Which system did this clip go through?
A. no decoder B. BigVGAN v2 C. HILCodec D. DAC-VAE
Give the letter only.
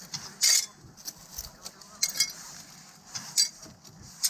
A